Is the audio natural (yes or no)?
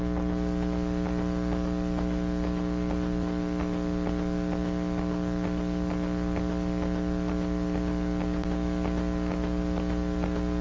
yes